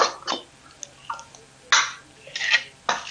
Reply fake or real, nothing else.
real